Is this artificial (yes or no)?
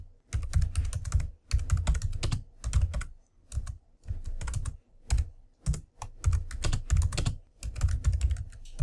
no